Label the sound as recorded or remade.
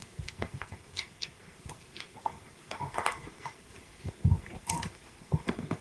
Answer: remade